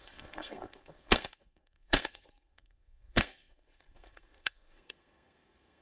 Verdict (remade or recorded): remade